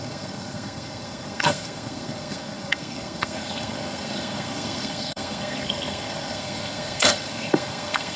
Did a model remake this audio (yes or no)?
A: yes